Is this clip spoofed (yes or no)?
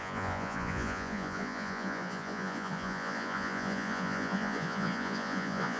yes